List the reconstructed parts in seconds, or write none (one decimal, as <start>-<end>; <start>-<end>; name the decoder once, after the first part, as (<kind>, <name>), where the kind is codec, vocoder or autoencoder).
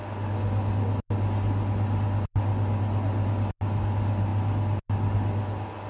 none